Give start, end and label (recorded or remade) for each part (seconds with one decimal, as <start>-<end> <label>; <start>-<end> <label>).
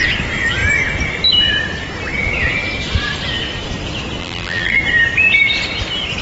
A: 0.0-4.2 recorded; 4.2-4.8 remade; 4.8-6.2 recorded